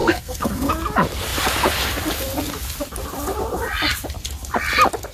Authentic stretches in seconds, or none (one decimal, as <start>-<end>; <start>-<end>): 0.7-5.1